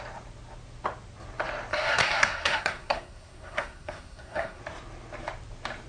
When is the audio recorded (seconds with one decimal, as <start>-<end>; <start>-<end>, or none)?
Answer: 0.0-1.7; 4.6-5.9